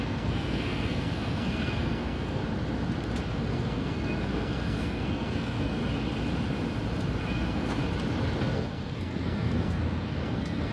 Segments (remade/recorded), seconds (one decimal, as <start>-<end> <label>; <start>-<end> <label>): 0.0-2.4 remade; 2.4-3.3 recorded; 3.3-5.8 remade; 5.8-7.2 recorded; 7.2-7.8 remade; 7.8-8.4 recorded; 8.4-10.7 remade